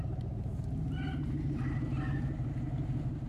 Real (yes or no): no